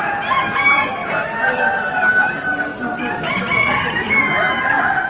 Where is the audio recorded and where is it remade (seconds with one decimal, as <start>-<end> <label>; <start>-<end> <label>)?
0.0-1.0 recorded; 1.0-2.3 remade; 2.3-5.1 recorded